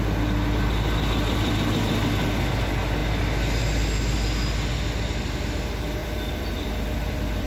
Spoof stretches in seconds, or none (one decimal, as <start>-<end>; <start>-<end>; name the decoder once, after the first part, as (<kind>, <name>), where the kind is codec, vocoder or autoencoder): 6.0-7.5 (vocoder, BigVGAN v2)